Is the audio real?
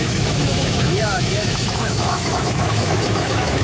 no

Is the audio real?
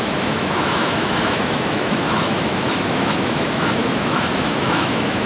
no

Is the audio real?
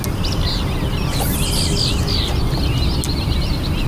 yes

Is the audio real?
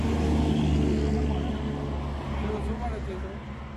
yes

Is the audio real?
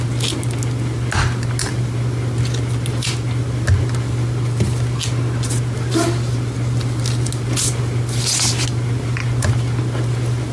yes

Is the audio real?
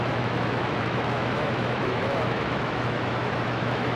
no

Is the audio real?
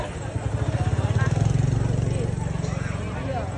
yes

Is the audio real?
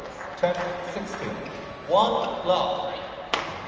yes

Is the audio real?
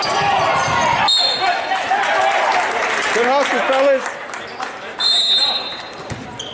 yes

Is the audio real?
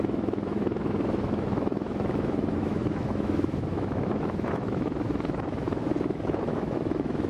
no